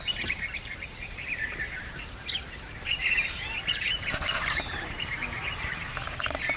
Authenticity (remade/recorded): remade